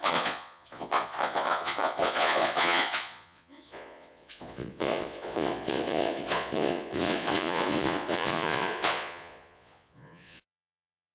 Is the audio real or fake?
fake